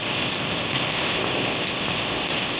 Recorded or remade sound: remade